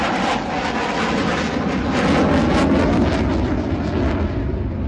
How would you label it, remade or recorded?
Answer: recorded